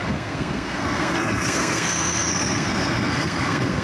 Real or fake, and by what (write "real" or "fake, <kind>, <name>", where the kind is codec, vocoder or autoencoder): fake, codec, SNAC